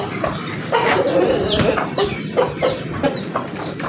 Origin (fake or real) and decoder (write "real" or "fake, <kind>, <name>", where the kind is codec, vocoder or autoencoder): fake, vocoder, BigVGAN v2